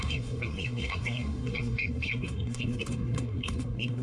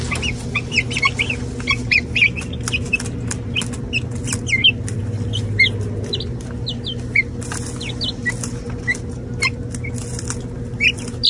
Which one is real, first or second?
second